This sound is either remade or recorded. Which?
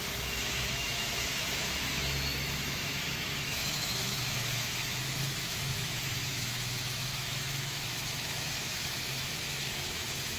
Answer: remade